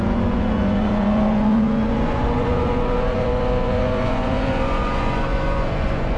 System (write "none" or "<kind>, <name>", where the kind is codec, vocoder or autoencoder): vocoder, Vocos